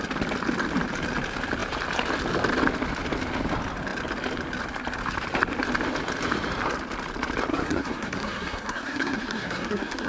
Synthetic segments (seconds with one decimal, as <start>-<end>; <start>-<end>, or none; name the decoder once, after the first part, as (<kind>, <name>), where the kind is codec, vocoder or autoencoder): 7.5-10.1 (codec, SNAC)